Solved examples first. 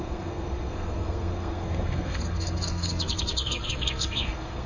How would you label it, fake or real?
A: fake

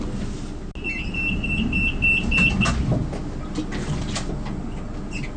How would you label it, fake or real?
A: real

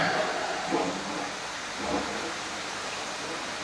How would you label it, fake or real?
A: real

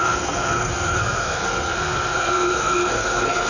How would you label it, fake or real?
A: fake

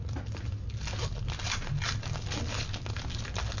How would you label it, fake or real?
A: real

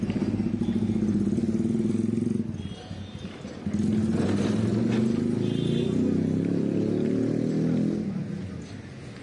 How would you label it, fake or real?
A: real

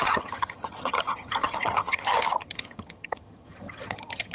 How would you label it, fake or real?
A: fake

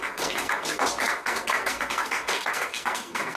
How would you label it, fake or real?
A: fake